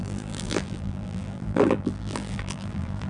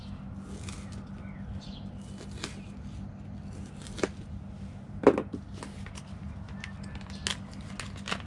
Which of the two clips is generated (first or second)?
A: first